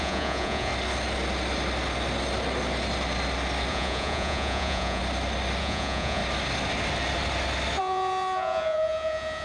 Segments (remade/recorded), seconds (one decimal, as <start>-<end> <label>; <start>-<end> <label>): 0.0-0.7 remade; 0.7-3.7 recorded; 3.7-5.0 remade; 5.0-5.6 recorded; 5.6-6.2 remade; 6.2-7.8 recorded; 7.8-9.4 remade